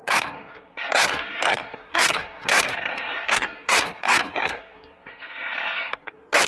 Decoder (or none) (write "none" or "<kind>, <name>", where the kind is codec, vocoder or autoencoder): codec, SNAC